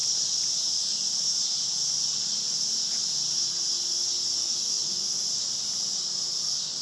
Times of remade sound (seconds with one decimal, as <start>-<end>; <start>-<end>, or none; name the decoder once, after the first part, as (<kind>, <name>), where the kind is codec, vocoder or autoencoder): 4.4-5.0 (autoencoder, DAC-VAE)